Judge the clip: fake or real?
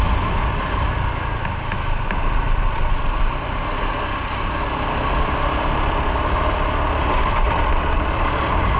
real